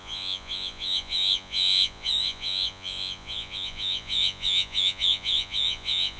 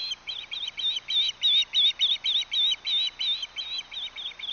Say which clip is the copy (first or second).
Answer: first